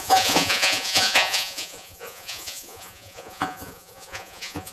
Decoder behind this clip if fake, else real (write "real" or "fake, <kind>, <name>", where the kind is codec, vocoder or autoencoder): fake, vocoder, Vocos